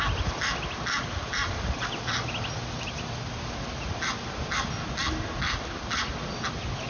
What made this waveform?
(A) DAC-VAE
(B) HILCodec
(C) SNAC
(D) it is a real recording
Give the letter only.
D